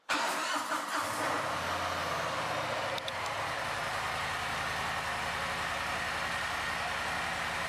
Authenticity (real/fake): real